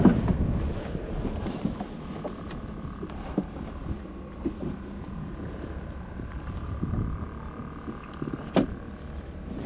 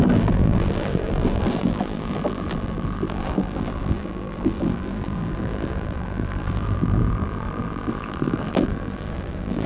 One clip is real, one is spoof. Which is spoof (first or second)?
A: second